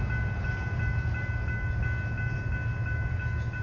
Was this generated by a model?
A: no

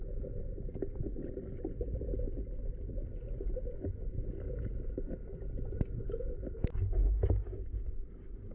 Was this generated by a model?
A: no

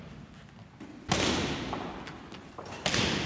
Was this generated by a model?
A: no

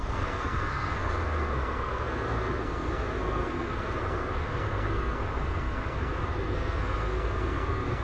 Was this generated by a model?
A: yes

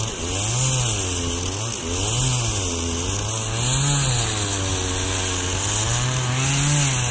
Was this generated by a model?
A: no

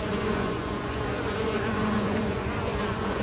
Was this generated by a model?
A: yes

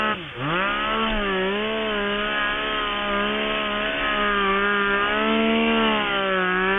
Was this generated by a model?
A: no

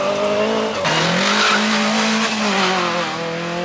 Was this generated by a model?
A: no